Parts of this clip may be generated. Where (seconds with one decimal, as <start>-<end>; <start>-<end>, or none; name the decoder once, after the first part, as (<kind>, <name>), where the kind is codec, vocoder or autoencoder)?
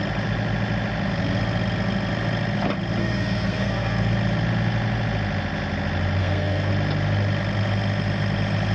3.0-4.1 (codec, SNAC); 6.2-6.7